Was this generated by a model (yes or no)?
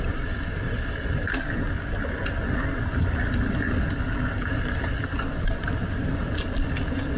no